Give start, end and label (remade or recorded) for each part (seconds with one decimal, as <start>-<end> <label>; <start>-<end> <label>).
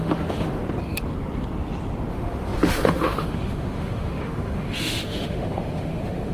0.0-0.6 remade; 0.6-2.1 recorded; 2.1-6.3 remade